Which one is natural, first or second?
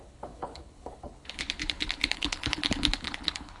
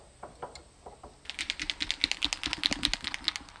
second